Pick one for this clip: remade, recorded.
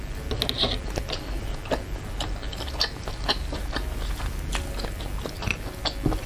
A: recorded